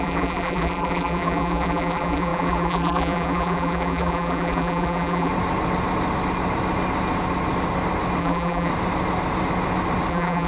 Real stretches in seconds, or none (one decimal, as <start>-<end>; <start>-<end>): 5.3-8.2; 8.7-10.1